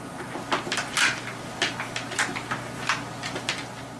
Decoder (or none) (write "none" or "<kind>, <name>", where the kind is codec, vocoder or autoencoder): none